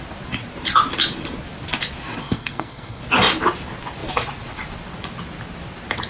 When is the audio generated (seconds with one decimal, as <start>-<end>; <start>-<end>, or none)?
2.2-3.0